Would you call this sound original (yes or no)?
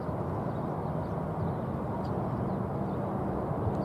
yes